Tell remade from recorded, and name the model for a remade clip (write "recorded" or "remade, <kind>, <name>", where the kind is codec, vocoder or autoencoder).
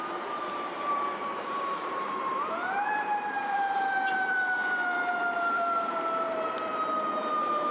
remade, vocoder, BigVGAN v2